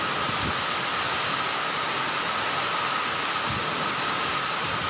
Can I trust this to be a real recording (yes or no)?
yes